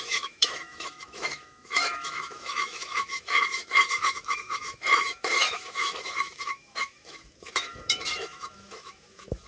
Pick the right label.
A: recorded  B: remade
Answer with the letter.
B